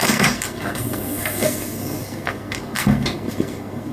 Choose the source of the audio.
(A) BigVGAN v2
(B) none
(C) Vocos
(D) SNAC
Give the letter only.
D